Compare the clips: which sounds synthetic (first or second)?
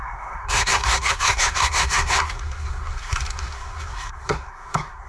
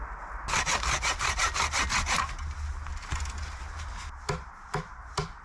first